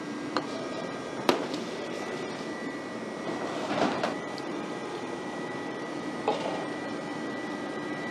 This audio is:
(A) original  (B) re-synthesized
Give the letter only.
B